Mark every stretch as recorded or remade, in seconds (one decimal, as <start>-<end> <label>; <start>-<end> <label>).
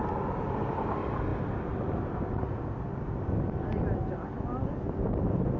0.0-5.6 recorded